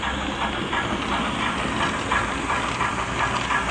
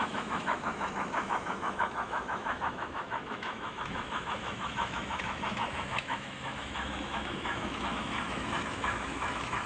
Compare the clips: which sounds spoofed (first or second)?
second